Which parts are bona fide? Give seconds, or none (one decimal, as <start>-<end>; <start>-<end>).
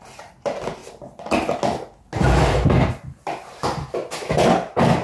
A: 0.0-5.0